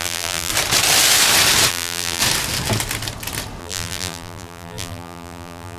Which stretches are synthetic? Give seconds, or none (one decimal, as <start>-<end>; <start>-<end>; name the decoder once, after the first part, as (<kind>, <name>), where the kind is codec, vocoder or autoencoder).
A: 0.0-0.5 (vocoder, BigVGAN v2); 1.7-2.2; 3.6-5.8